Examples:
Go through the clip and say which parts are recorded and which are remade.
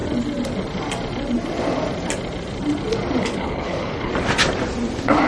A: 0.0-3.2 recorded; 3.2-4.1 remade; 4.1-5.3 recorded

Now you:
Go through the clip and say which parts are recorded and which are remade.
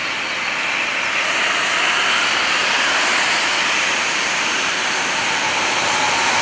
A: 0.0-2.6 recorded; 2.6-5.9 remade; 5.9-6.4 recorded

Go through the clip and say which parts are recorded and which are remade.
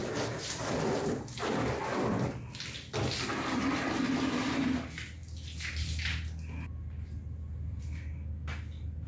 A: 0.0-9.1 recorded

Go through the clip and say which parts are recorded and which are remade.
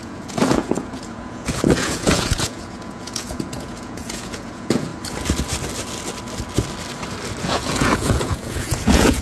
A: 0.0-4.9 remade; 4.9-7.4 recorded; 7.4-9.2 remade